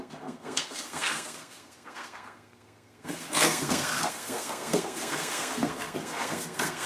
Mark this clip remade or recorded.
remade